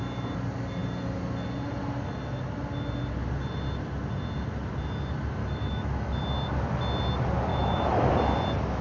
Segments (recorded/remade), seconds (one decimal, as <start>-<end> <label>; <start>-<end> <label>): 0.0-5.4 recorded; 5.4-6.1 remade; 6.1-7.5 recorded; 7.5-8.1 remade; 8.1-8.8 recorded

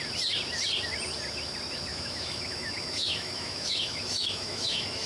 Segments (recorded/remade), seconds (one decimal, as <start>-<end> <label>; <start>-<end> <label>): 0.0-1.9 recorded; 1.9-5.1 remade

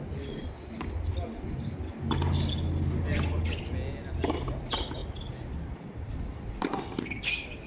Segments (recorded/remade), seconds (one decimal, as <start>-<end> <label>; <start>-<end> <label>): 0.0-7.7 recorded

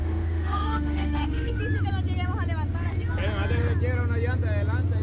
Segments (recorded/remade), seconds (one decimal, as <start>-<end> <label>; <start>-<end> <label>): 0.0-1.6 remade; 1.6-5.0 recorded

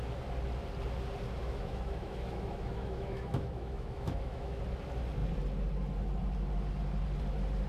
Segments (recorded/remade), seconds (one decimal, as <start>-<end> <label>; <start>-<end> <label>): 0.0-1.4 recorded; 1.4-4.6 remade; 4.6-7.7 recorded

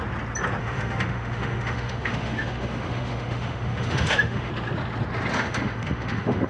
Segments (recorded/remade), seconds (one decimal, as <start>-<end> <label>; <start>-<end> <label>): 0.0-0.6 recorded; 0.6-4.5 remade; 4.5-5.3 recorded; 5.3-6.5 remade